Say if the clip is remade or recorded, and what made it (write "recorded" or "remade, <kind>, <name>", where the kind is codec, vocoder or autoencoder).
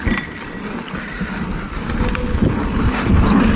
recorded